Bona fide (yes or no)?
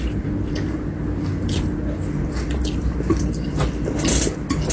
yes